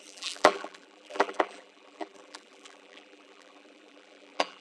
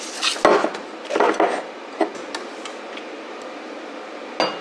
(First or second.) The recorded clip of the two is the second